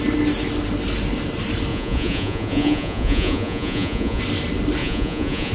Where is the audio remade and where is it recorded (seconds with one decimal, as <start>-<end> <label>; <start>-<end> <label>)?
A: 0.0-1.7 recorded; 1.7-4.2 remade; 4.2-4.8 recorded; 4.8-5.5 remade